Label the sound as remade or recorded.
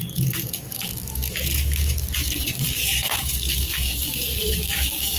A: remade